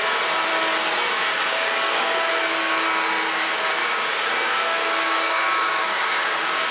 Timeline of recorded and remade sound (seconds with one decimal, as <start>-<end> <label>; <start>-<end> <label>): 0.0-1.5 recorded; 1.5-2.3 remade; 2.3-3.8 recorded; 3.8-6.2 remade; 6.2-6.7 recorded